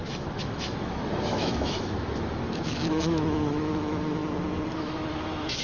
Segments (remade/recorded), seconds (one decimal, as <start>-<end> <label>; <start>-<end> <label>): 0.0-4.2 remade; 4.2-4.8 recorded; 4.8-5.6 remade